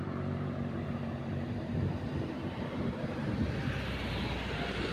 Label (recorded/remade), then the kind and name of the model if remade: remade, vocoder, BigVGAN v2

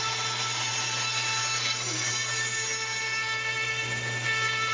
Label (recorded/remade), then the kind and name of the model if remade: recorded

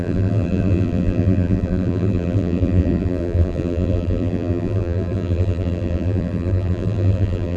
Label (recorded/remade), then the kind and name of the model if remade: remade, vocoder, BigVGAN v2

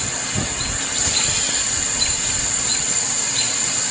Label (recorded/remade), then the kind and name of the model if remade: recorded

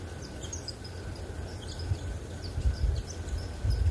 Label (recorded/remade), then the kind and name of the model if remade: recorded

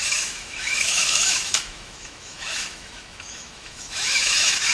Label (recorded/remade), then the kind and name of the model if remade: remade, autoencoder, DAC-VAE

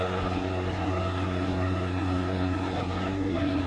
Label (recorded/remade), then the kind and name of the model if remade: remade, codec, SNAC